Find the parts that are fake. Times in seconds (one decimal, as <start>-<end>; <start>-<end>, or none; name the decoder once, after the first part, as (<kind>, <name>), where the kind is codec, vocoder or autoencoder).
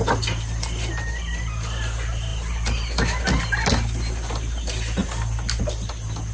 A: none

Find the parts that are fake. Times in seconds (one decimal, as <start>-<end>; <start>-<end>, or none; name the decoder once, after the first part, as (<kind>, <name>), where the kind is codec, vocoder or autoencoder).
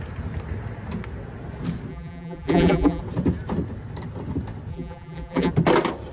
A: 1.9-3.0 (vocoder, BigVGAN v2); 4.7-5.5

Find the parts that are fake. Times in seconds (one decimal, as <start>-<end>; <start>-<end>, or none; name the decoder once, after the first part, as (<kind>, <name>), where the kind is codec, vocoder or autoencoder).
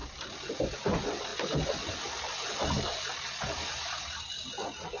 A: none